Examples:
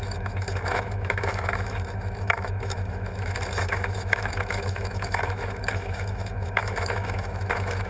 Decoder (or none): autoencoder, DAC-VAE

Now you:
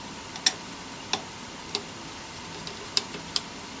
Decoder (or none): none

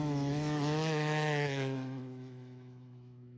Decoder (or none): autoencoder, DAC-VAE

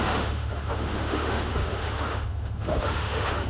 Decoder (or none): autoencoder, DAC-VAE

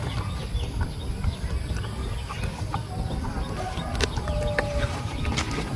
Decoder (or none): none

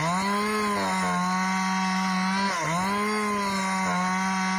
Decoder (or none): none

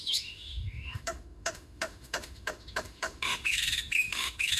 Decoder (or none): autoencoder, DAC-VAE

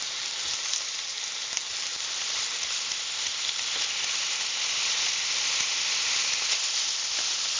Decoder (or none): none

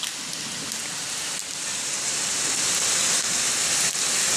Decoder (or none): none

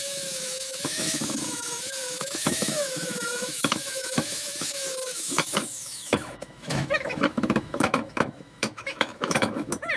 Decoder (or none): autoencoder, DAC-VAE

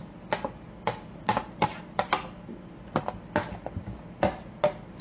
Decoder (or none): none